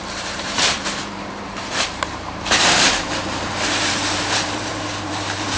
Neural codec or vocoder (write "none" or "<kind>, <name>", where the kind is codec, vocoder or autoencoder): vocoder, BigVGAN v2